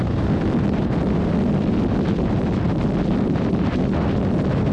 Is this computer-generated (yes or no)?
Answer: no